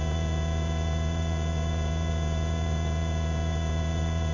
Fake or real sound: fake